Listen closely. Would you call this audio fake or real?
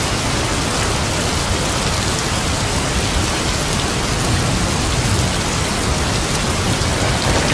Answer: real